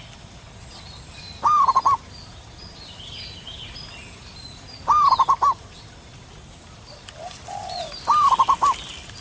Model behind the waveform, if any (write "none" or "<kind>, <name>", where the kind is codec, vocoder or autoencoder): none